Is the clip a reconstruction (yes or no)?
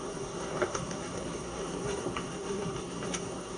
yes